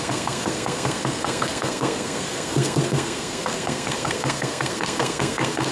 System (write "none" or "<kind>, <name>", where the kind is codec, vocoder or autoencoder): codec, SNAC